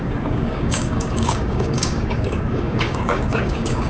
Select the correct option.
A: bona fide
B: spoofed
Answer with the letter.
B